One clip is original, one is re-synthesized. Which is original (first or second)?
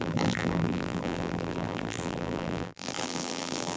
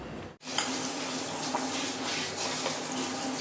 second